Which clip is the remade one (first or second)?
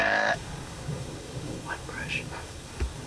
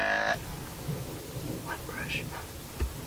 first